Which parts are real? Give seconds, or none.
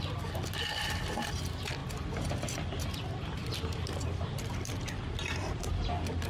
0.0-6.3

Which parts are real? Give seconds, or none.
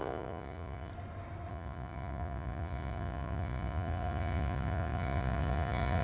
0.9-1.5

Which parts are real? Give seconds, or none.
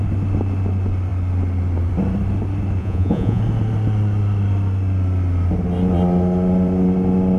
0.0-2.8; 3.4-7.4